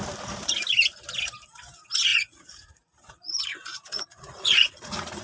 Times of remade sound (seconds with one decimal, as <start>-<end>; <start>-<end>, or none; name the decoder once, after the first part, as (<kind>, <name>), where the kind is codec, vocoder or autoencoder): 2.1-5.2 (vocoder, Vocos)